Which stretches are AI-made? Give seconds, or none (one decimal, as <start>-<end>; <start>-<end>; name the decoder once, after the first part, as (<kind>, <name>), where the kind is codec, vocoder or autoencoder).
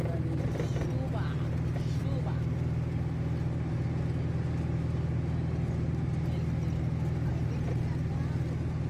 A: none